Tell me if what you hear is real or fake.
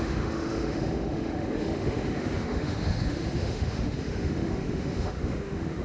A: fake